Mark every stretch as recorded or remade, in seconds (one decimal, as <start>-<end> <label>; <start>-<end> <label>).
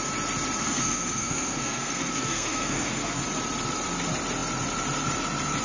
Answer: 0.0-0.6 recorded; 0.6-3.2 remade; 3.2-5.6 recorded